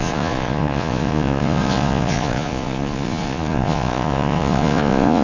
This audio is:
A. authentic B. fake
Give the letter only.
B